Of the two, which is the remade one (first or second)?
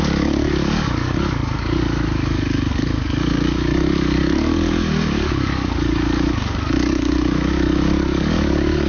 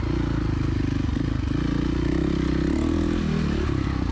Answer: first